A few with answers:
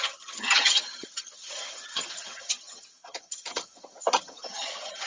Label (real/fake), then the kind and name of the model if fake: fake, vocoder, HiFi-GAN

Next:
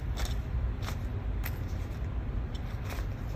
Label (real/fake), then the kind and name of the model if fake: real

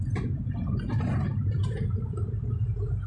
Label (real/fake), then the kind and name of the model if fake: fake, vocoder, BigVGAN v2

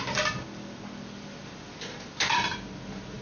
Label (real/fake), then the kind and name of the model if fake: real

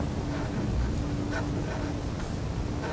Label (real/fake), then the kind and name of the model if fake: real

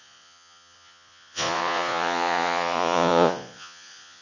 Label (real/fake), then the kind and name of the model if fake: fake, vocoder, Vocos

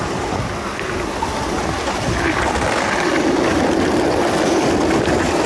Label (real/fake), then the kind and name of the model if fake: real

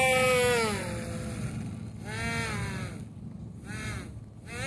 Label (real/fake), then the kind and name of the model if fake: real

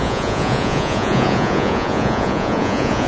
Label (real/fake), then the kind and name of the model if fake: fake, vocoder, Vocos